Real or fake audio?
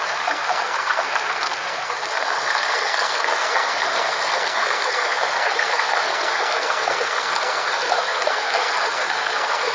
fake